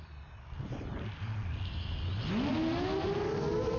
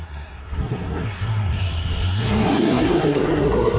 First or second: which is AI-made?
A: second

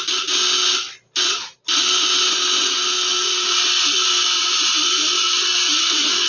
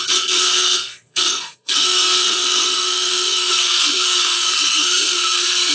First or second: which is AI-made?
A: second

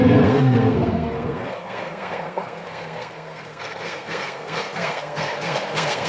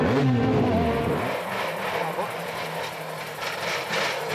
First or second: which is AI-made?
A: first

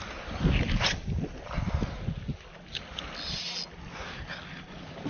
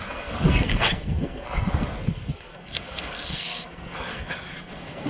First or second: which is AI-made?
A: second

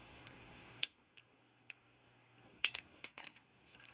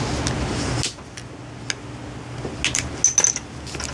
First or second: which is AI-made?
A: first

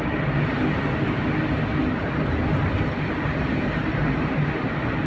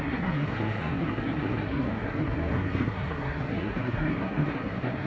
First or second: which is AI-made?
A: second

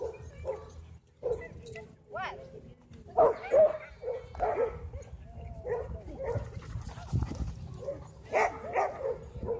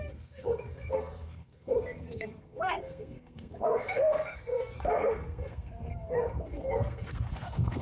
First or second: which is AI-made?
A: second